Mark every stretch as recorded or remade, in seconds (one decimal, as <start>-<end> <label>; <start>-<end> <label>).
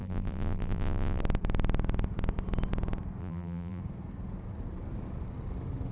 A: 0.0-1.2 remade; 1.2-3.2 recorded; 3.2-3.8 remade; 3.8-5.9 recorded